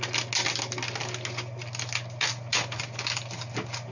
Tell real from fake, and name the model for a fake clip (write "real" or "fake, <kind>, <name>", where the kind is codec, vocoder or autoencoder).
real